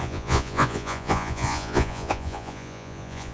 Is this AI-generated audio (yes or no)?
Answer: yes